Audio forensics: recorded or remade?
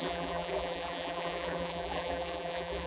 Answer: remade